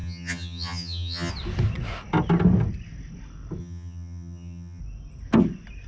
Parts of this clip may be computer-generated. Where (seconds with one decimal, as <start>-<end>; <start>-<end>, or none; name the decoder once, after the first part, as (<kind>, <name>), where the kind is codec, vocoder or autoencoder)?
0.0-1.3 (vocoder, HiFi-GAN); 3.6-4.8